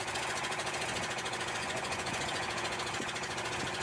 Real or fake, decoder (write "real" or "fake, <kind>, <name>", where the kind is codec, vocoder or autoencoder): fake, vocoder, Vocos